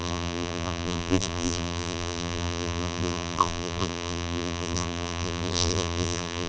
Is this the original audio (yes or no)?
no